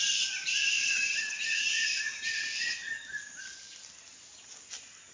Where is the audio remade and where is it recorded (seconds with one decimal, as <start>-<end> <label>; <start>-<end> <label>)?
0.0-0.8 recorded; 0.8-1.6 remade; 1.6-5.1 recorded